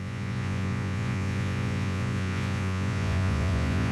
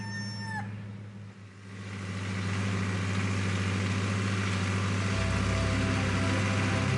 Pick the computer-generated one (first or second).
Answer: first